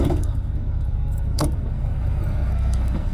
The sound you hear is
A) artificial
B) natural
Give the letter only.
A